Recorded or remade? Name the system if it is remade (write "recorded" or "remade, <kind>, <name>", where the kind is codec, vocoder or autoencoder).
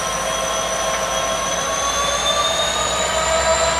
recorded